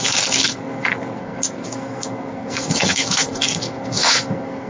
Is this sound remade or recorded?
remade